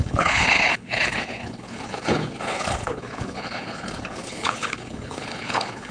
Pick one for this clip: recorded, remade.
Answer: remade